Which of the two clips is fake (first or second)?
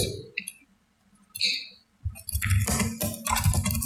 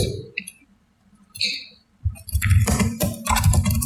second